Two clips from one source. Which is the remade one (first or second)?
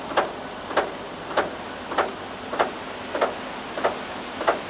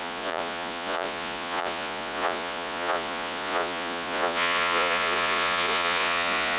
second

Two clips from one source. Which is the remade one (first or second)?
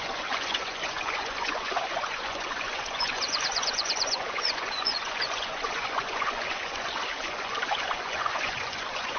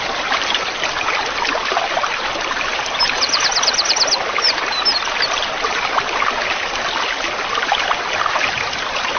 first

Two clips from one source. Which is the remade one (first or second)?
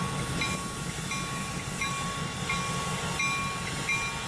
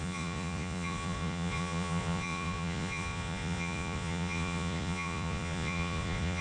second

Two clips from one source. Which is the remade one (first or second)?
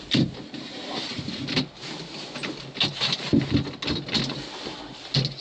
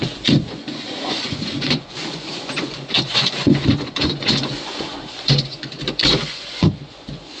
second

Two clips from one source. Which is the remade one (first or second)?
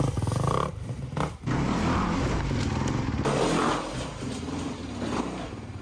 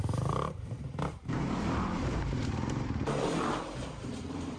second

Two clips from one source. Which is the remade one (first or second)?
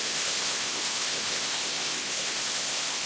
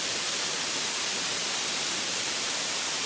first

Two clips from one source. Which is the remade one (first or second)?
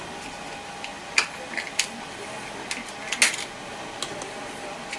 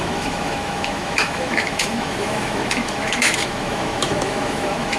second